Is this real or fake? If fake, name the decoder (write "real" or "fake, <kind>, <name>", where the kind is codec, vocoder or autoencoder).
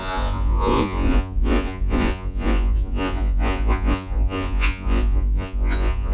fake, vocoder, Vocos